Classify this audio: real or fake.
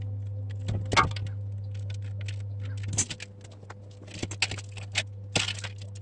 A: real